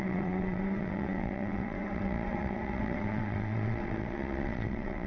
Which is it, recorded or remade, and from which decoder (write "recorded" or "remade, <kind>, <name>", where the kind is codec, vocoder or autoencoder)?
remade, vocoder, WaveNeXt